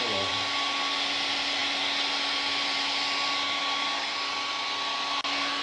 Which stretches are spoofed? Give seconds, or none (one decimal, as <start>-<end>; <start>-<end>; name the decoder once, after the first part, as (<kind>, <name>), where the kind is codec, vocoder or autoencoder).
none